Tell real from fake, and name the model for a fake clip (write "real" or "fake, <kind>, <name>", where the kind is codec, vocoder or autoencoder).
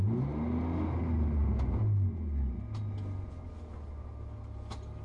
real